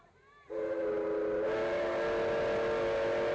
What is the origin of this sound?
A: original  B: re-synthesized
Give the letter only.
A